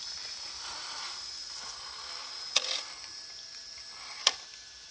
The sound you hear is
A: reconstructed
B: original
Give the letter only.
B